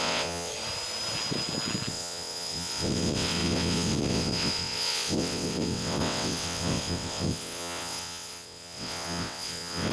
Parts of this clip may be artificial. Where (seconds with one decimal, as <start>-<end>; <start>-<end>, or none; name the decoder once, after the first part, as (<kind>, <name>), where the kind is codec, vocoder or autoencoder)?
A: 0.0-0.5 (vocoder, WaveNeXt); 1.9-9.9